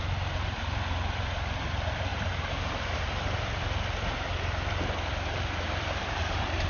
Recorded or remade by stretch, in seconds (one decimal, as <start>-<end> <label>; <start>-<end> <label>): 0.0-6.7 recorded